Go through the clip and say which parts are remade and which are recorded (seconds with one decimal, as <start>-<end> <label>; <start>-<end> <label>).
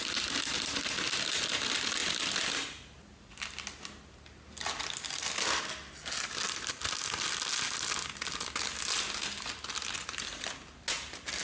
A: 0.0-11.4 recorded